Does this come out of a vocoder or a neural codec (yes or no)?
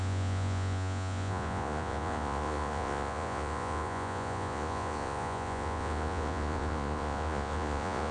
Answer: yes